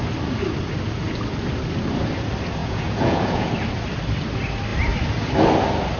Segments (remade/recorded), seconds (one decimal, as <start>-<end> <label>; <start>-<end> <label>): 0.0-2.6 recorded; 2.6-3.5 remade; 3.5-6.0 recorded